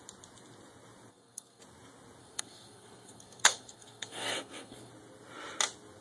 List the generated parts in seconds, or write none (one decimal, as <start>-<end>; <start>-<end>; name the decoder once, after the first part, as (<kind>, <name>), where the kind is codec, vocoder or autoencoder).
1.1-1.6 (codec, SNAC); 2.2-4.9